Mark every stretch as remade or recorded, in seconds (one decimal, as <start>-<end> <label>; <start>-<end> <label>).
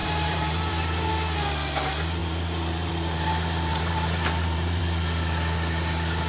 0.0-1.1 remade; 1.1-2.2 recorded; 2.2-2.9 remade; 2.9-3.7 recorded; 3.7-4.8 remade; 4.8-6.3 recorded